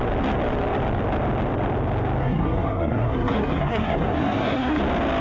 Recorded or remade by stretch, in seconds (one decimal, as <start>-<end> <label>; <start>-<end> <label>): 0.0-2.2 recorded; 2.2-4.8 remade; 4.8-5.2 recorded

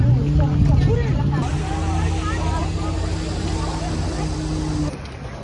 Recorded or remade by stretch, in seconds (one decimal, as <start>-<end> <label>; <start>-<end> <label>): 0.0-5.4 recorded